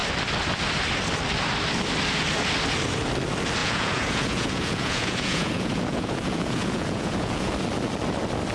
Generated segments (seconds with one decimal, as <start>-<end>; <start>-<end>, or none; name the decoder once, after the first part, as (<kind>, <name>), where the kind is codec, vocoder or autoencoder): 3.6-7.5 (vocoder, Vocos)